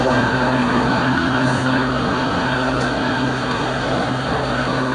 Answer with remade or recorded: remade